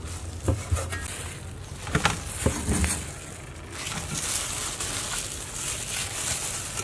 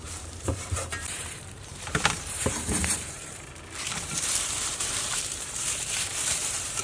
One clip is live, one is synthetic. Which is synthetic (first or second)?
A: second